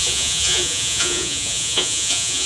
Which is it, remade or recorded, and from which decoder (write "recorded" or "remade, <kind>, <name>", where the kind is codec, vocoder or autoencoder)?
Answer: remade, vocoder, Vocos